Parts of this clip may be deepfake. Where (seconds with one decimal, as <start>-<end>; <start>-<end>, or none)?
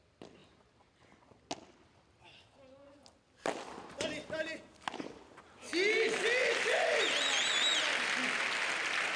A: none